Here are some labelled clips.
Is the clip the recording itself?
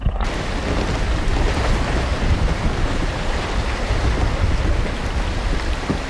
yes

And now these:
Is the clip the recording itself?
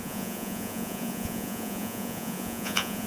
no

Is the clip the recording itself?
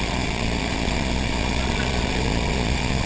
no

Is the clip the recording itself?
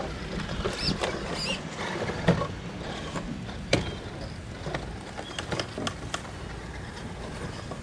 yes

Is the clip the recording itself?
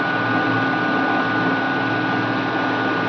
yes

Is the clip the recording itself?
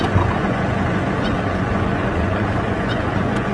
no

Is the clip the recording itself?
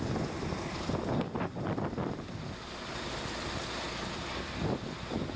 yes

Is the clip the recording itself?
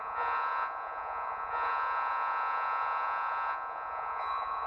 no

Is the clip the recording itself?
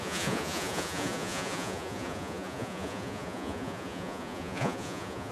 no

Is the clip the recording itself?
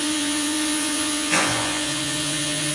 no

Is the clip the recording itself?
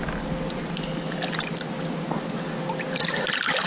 yes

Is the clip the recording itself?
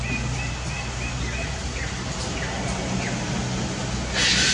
yes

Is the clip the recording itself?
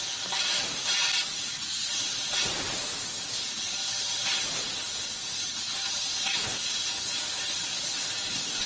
yes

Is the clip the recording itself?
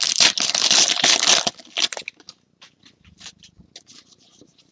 yes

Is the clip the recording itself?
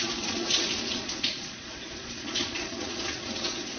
no